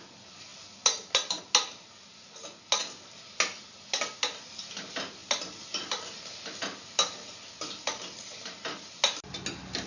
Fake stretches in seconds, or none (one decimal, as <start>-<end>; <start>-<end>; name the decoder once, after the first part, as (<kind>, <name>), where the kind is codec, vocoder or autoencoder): none